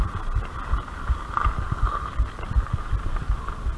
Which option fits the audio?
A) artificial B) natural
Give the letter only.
B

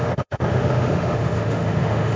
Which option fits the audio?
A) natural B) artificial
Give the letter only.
B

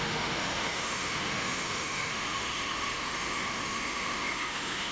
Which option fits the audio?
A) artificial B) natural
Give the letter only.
A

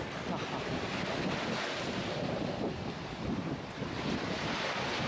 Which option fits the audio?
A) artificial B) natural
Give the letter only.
B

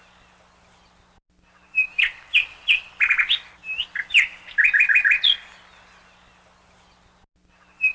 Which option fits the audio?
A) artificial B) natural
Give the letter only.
B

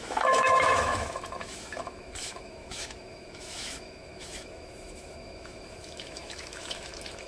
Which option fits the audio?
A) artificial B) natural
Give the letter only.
A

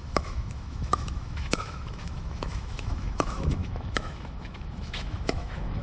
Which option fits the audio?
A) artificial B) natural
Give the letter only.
A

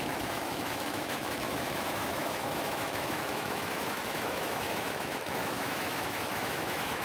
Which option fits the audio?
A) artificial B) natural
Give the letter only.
A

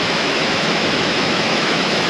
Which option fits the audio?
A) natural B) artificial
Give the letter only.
B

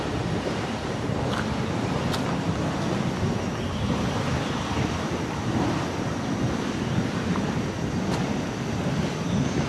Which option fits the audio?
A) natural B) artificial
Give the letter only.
A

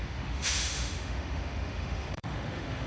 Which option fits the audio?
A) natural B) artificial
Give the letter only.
B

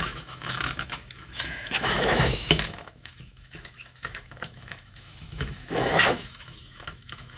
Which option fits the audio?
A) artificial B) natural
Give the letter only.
A